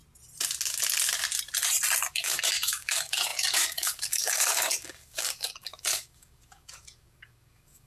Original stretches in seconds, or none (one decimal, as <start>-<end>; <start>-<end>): 0.0-2.1